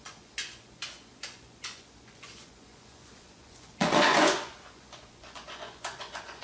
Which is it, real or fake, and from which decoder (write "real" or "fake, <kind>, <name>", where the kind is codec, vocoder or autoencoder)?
fake, vocoder, Vocos